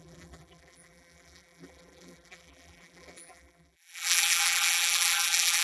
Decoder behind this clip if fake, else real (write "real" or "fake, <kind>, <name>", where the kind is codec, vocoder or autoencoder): fake, vocoder, BigVGAN v2